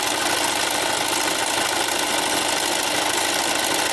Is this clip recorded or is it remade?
recorded